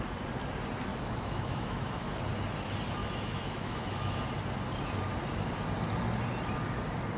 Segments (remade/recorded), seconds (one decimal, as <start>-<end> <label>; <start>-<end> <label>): 0.0-0.9 recorded; 0.9-2.1 remade; 2.1-3.0 recorded; 3.0-4.2 remade; 4.2-7.2 recorded

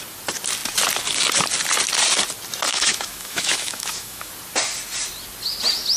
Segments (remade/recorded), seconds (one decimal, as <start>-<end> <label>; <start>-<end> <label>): 0.0-2.7 recorded; 2.7-4.3 remade; 4.3-6.0 recorded

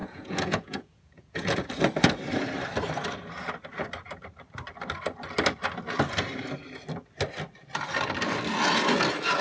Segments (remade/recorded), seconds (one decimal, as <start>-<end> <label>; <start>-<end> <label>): 0.0-1.7 remade; 1.7-9.4 recorded

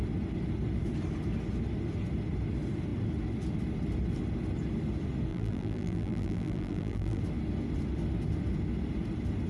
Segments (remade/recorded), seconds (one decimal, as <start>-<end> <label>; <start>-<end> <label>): 0.0-5.3 recorded; 5.3-7.2 remade; 7.2-9.5 recorded

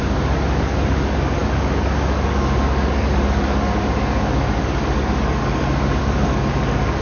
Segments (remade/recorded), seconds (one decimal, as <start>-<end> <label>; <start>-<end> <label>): 0.0-7.0 remade

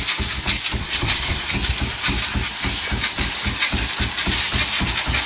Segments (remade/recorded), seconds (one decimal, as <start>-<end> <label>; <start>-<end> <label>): 0.0-0.8 recorded; 0.8-1.5 remade; 1.5-5.3 recorded